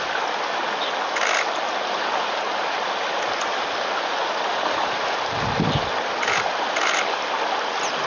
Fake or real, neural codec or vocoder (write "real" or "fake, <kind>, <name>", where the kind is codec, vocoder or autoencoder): real